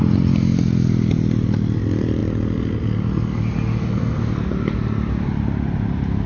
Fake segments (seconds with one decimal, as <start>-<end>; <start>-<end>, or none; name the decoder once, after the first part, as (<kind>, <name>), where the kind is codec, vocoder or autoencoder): none